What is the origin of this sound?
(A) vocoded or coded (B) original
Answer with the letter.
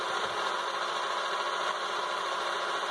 B